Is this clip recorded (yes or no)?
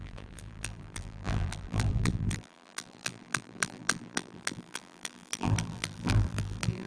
no